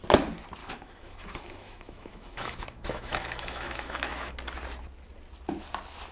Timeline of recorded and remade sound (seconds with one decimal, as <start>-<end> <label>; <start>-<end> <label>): 0.0-0.6 recorded; 0.6-4.3 remade; 4.3-6.1 recorded

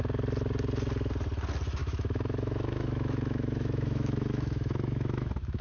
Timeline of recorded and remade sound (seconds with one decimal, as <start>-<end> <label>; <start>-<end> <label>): 0.0-1.8 recorded; 1.8-5.6 remade

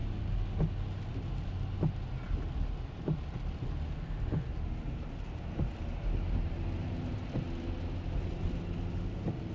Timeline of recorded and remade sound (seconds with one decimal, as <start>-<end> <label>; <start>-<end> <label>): 0.0-9.5 recorded

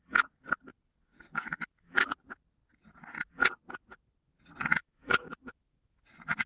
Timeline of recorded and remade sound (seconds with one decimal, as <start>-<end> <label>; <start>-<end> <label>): 0.0-0.7 recorded; 0.7-2.1 remade; 2.1-4.8 recorded; 4.8-6.0 remade; 6.0-6.5 recorded

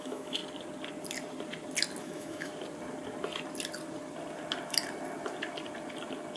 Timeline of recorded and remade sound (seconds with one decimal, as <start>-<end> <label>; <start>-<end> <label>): 0.0-0.4 remade; 0.4-2.0 recorded; 2.0-2.5 remade; 2.5-6.4 recorded

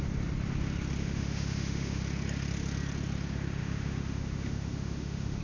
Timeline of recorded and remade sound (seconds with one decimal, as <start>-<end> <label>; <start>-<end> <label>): 0.0-1.0 recorded; 1.0-2.0 remade; 2.0-3.6 recorded; 3.6-5.4 remade

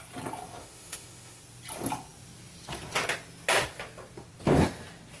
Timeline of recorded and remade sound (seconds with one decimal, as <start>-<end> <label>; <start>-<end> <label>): 0.0-0.6 recorded; 0.6-1.4 remade; 1.4-5.2 recorded

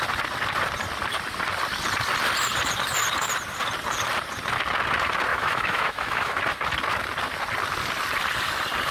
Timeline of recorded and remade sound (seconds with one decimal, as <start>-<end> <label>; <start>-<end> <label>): 0.0-5.3 recorded; 5.3-6.4 remade; 6.4-8.9 recorded